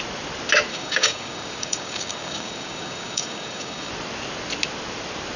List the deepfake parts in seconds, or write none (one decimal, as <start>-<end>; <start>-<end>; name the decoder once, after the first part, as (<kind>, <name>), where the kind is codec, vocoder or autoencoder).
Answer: 0.7-3.9 (codec, DAC)